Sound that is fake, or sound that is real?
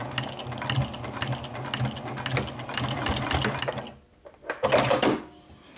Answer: real